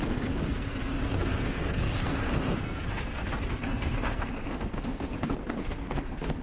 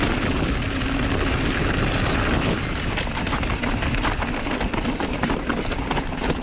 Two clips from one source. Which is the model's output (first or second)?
first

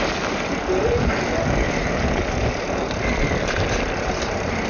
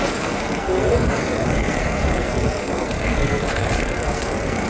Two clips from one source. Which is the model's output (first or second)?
second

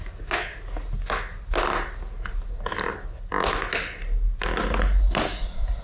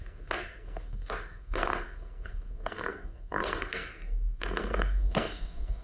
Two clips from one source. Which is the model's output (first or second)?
second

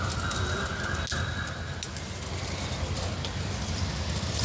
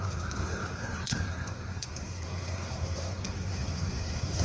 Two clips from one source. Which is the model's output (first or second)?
second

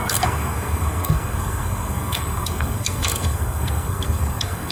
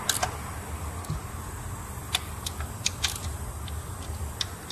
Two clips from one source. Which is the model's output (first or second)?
first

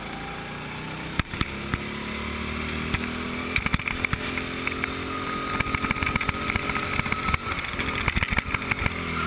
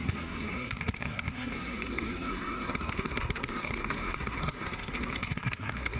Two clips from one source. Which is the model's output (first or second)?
second